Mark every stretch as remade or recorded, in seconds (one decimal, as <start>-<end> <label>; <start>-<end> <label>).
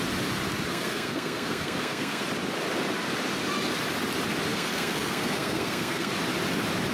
0.0-0.7 recorded; 0.7-2.2 remade; 2.2-4.5 recorded; 4.5-6.1 remade; 6.1-6.9 recorded